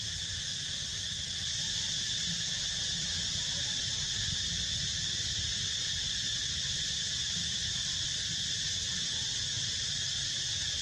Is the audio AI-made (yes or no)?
yes